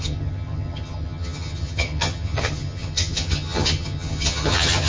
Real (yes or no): no